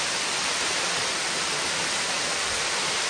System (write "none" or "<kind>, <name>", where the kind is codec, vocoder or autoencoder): none